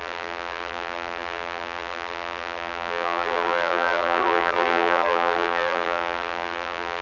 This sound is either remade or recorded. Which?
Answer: remade